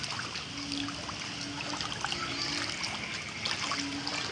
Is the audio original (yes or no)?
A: yes